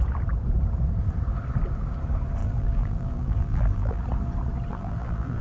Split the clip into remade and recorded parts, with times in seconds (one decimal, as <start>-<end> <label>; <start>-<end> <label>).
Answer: 0.0-2.4 recorded; 2.4-4.0 remade; 4.0-4.7 recorded; 4.7-5.4 remade

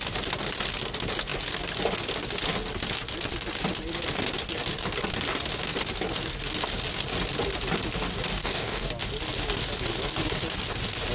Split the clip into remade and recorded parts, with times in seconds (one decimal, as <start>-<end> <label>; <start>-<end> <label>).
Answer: 0.0-8.4 recorded; 8.4-8.9 remade; 8.9-11.1 recorded

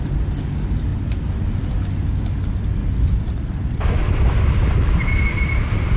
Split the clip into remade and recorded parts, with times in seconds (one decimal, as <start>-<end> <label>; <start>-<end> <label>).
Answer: 0.0-2.8 recorded; 2.8-3.9 remade; 3.9-6.0 recorded

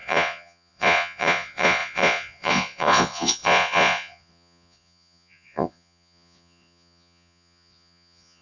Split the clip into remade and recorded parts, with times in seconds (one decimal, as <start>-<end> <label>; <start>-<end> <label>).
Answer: 0.0-8.4 remade

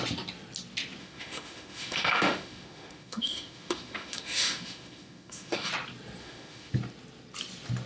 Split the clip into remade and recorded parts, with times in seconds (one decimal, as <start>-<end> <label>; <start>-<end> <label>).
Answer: 0.0-1.0 recorded; 1.0-5.7 remade; 5.7-6.2 recorded; 6.2-6.7 remade; 6.7-7.9 recorded

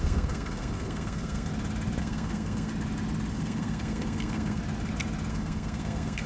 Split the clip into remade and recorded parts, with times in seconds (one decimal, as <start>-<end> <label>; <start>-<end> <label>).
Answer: 0.0-1.5 remade; 1.5-2.0 recorded; 2.0-2.7 remade; 2.7-3.3 recorded; 3.3-4.6 remade; 4.6-5.3 recorded; 5.3-6.3 remade

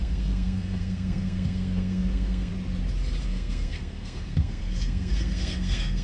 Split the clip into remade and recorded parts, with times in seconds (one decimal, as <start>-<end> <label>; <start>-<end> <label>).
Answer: 0.0-2.5 remade; 2.5-3.2 recorded; 3.2-6.0 remade